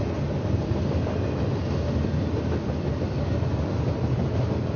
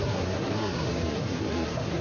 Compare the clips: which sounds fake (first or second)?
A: second